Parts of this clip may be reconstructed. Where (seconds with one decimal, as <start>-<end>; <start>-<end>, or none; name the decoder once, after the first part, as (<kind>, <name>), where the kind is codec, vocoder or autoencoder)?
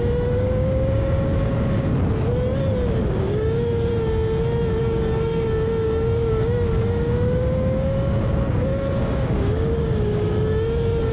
0.0-1.9 (codec, DAC); 3.1-3.9; 4.8-11.1